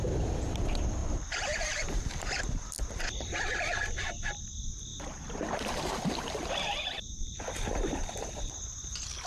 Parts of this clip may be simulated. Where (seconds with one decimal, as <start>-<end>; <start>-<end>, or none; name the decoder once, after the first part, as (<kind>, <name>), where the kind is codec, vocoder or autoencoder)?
1.0-2.7 (vocoder, BigVGAN v2); 4.9-9.3